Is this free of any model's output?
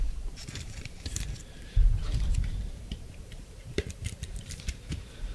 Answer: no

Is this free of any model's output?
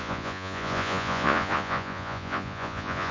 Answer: no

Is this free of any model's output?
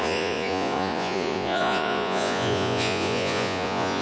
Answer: no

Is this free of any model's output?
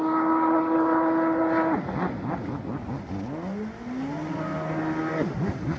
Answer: yes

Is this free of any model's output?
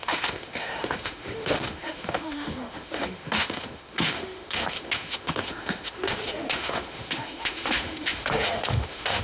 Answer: no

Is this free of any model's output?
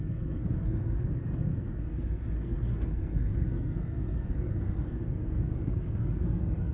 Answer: no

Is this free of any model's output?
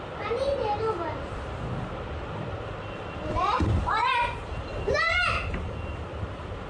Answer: yes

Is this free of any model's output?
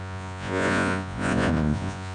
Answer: no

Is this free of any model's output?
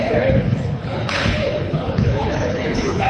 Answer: no